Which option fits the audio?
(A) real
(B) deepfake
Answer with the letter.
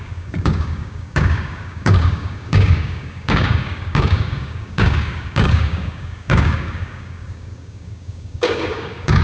B